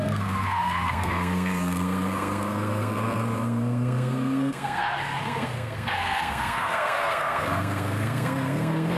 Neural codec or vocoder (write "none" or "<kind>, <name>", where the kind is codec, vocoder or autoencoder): codec, SNAC